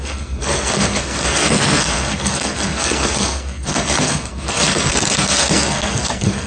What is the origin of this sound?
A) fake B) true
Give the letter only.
A